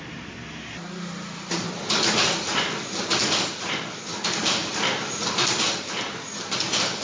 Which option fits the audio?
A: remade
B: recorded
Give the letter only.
A